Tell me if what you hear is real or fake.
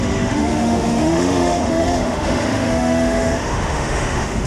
fake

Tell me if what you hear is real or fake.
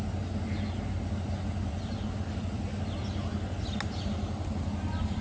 real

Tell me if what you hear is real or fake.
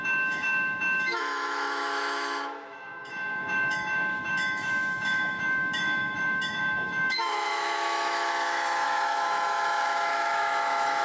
fake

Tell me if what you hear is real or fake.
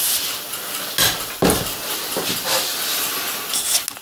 real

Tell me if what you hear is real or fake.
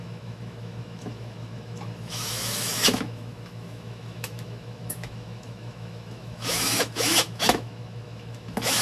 fake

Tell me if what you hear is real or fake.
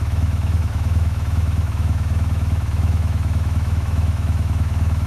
fake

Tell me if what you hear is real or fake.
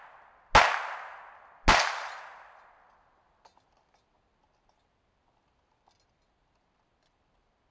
real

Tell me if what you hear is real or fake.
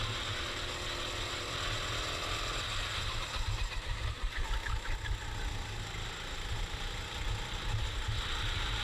real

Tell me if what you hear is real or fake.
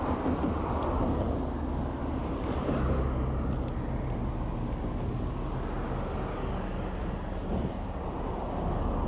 real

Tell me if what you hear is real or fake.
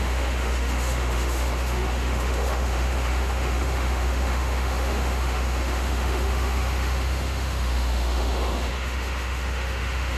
fake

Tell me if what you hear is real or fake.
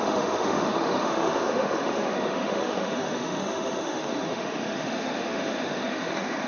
fake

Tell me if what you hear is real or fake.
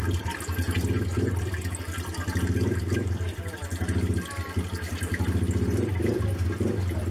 real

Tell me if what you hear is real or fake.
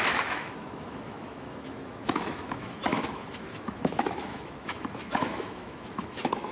fake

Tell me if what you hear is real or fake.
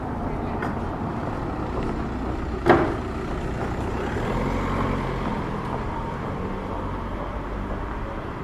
real